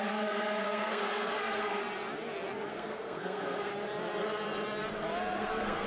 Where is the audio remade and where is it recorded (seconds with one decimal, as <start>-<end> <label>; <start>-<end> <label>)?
0.0-1.8 remade; 1.8-2.7 recorded; 2.7-3.7 remade; 3.7-5.2 recorded; 5.2-5.9 remade